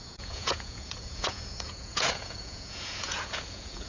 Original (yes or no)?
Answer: no